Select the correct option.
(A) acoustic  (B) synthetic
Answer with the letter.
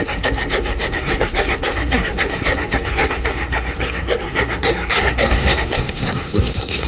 B